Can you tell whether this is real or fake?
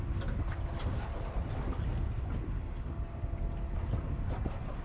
real